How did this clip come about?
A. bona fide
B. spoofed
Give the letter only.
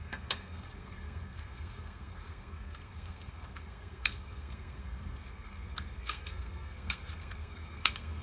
B